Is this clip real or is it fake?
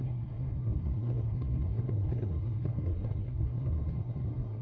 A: fake